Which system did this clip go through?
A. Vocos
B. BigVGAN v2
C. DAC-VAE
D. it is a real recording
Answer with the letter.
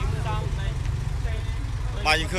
D